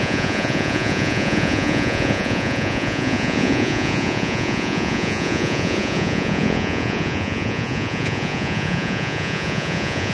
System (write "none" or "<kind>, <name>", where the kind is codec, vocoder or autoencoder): vocoder, Vocos